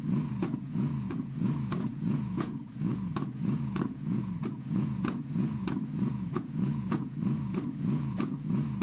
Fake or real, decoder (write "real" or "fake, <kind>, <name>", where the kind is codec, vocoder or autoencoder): fake, vocoder, Vocos